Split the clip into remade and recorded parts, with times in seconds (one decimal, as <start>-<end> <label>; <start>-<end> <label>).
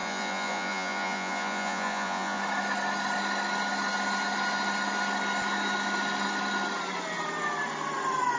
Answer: 0.0-2.4 remade; 2.4-8.4 recorded